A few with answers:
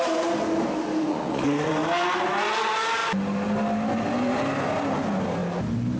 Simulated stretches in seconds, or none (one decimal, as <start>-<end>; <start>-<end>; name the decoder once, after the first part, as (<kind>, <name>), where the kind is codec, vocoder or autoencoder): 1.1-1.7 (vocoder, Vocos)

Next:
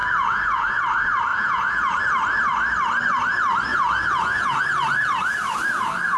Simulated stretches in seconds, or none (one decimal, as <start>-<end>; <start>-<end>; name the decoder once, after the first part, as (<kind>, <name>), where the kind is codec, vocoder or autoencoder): 0.0-0.8 (vocoder, Vocos); 1.3-2.0; 3.7-4.6

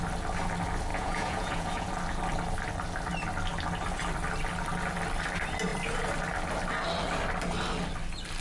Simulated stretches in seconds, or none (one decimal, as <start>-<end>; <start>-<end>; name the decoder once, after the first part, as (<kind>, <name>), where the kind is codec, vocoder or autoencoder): 0.9-1.9 (vocoder, Vocos)

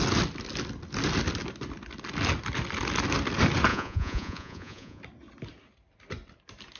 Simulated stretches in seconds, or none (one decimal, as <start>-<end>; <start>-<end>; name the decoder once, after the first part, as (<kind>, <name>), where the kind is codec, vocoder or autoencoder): 3.7-5.0 (vocoder, Vocos)

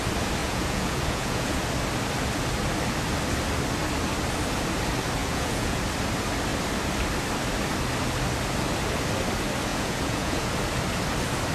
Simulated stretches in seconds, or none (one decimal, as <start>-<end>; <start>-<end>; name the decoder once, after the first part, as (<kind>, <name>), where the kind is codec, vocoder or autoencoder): 0.4-1.6 (vocoder, Vocos); 5.2-5.8; 9.7-10.5